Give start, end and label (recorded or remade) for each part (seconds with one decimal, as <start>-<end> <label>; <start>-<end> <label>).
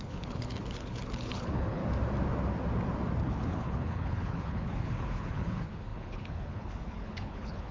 0.0-1.8 remade; 1.8-3.2 recorded; 3.2-7.7 remade